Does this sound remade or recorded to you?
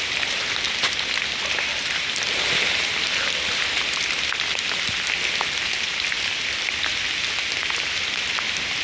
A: recorded